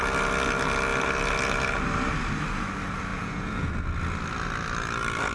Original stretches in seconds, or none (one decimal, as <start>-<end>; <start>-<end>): 0.0-3.1; 3.7-5.3